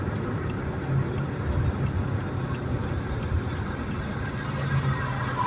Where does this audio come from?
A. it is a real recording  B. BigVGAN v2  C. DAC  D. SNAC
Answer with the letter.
B